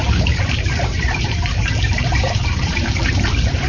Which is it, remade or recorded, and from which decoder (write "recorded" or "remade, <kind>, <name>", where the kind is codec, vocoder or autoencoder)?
remade, vocoder, BigVGAN v2